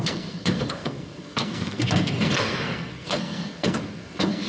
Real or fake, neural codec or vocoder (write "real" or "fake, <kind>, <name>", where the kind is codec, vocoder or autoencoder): fake, codec, SNAC